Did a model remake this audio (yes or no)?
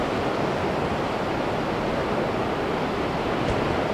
no